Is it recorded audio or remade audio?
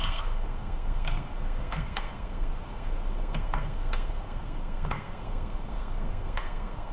remade